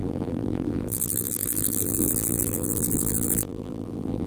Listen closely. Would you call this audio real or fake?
fake